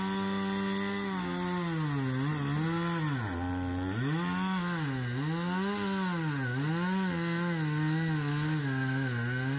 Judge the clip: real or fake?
real